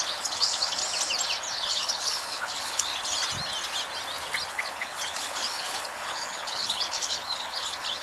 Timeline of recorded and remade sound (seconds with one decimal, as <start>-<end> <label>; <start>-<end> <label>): 0.0-0.8 remade; 0.8-1.5 recorded; 1.5-2.9 remade; 2.9-4.5 recorded; 4.5-8.0 remade